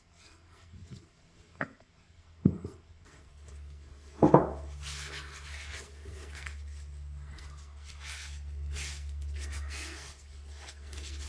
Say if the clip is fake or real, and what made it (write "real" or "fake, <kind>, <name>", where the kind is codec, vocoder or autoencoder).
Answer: fake, codec, SNAC